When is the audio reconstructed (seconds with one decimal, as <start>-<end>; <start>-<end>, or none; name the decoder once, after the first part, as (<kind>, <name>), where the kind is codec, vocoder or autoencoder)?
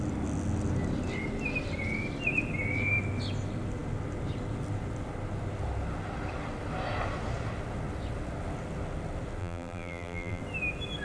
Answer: 9.4-10.4 (vocoder, BigVGAN v2)